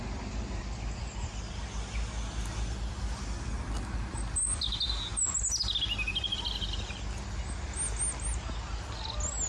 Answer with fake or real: real